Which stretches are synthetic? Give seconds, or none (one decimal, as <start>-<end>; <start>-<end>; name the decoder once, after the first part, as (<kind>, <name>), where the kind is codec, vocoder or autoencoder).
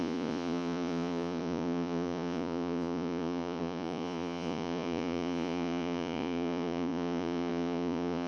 0.0-8.3 (vocoder, Vocos)